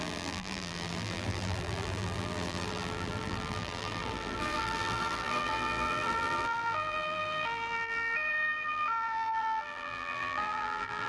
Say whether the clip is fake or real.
fake